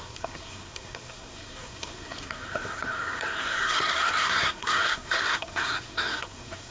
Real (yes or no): no